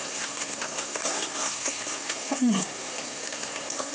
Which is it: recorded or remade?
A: remade